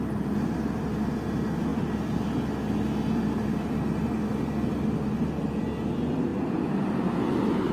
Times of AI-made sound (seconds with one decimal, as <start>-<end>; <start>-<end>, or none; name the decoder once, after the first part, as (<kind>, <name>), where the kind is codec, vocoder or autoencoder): none

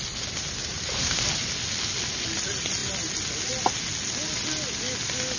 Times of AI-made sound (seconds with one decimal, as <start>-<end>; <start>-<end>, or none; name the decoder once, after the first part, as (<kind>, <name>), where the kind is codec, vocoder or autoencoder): 0.6-1.3 (vocoder, BigVGAN v2)

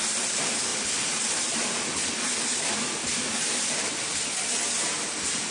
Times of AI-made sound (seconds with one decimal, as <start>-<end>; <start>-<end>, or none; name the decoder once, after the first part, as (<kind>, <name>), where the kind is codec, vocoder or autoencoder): 0.7-2.1 (vocoder, BigVGAN v2)